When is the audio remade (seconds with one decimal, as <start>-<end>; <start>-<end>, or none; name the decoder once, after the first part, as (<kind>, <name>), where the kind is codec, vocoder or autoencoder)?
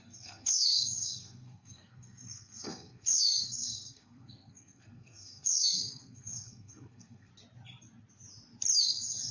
0.0-7.3 (codec, SNAC); 8.8-9.3